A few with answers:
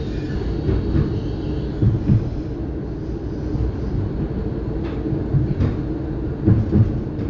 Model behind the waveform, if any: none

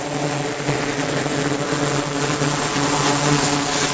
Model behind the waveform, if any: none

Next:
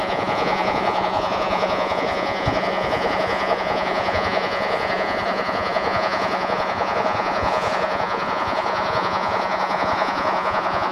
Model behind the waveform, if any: vocoder, Vocos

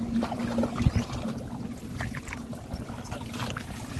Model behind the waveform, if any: none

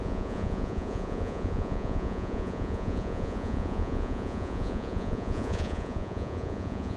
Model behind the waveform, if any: vocoder, Vocos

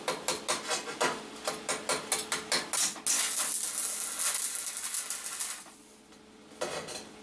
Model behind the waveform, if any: none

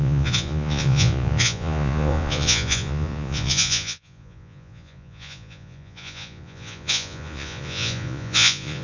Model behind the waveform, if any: vocoder, Vocos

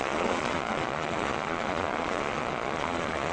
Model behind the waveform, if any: vocoder, Vocos